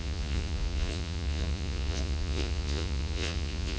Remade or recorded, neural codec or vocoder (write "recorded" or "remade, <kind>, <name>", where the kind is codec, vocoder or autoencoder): remade, vocoder, Vocos